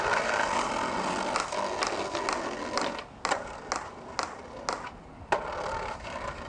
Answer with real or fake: real